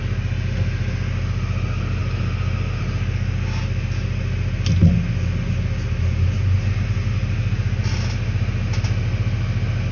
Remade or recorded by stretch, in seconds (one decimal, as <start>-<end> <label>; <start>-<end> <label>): 0.0-9.9 recorded